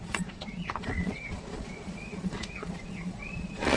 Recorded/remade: remade